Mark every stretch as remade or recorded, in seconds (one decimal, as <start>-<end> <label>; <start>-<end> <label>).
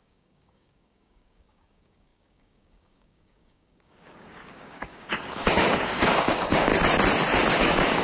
0.0-6.7 remade; 6.7-7.5 recorded; 7.5-8.0 remade